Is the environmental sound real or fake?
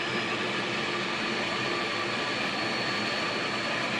fake